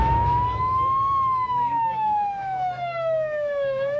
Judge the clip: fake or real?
fake